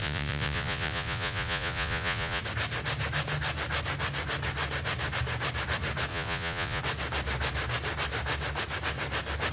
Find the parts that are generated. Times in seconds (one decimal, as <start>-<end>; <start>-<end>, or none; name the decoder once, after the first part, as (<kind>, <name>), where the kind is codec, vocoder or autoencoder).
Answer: 0.0-2.4 (vocoder, Vocos); 6.1-6.8